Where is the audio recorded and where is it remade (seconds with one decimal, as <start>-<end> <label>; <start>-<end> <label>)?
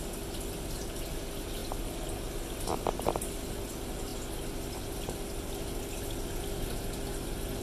0.0-7.6 recorded